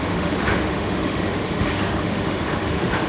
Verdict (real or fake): fake